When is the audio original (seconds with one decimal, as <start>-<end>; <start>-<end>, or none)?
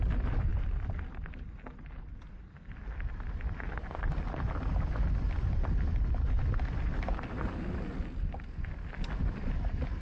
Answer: 0.0-10.0